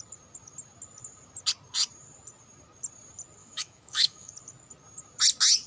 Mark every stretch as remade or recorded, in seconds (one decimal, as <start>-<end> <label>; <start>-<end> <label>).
0.0-3.4 recorded; 3.4-4.3 remade; 4.3-5.7 recorded